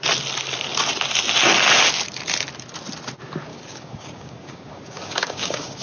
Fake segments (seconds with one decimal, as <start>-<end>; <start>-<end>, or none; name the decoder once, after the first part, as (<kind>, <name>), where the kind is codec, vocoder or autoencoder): 3.5-5.8 (codec, DAC)

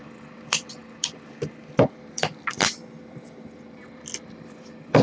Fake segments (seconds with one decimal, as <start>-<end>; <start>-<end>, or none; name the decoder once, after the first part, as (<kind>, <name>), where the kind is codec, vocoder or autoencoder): 0.0-0.8 (vocoder, BigVGAN v2); 2.0-5.0

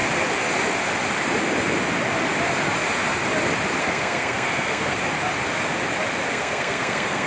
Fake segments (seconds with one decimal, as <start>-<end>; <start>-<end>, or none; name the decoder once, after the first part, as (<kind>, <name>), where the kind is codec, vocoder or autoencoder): 3.8-5.0 (codec, SNAC); 6.3-7.3

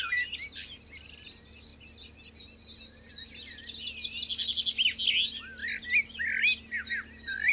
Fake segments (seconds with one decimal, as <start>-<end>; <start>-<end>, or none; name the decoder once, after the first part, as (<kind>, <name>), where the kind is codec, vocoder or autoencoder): none

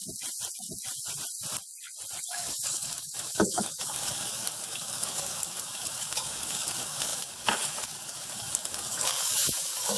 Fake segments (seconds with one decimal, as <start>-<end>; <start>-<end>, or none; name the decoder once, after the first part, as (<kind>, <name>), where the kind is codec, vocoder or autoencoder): 2.3-10.0 (codec, DAC)